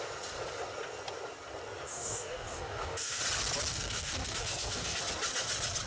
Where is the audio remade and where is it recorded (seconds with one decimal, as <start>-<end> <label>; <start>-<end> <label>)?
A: 0.0-1.9 recorded; 1.9-3.2 remade; 3.2-3.7 recorded; 3.7-5.0 remade; 5.0-5.9 recorded